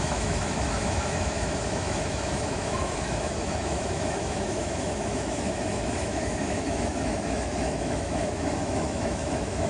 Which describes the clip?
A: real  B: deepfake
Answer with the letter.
B